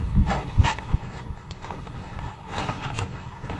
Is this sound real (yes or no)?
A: no